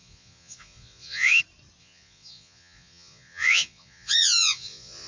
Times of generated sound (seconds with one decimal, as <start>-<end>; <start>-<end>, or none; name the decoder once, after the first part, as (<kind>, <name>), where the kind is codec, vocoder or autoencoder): 0.0-1.4 (vocoder, Vocos); 1.8-5.1